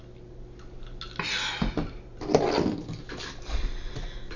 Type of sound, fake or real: real